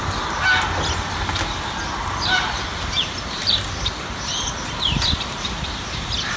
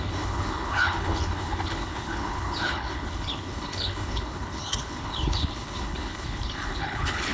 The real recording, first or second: first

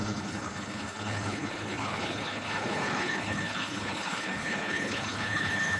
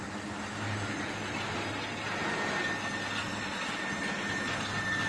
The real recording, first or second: second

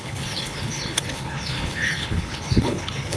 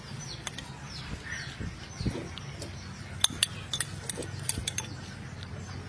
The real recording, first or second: second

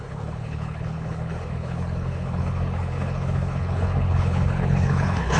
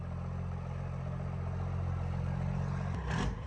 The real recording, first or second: second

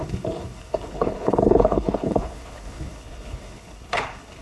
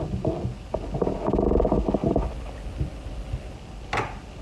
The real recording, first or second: second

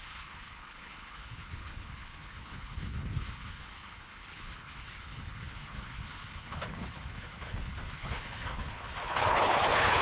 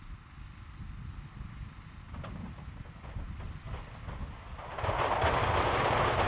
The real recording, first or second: second